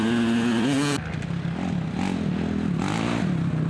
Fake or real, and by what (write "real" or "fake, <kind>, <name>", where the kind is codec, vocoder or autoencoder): real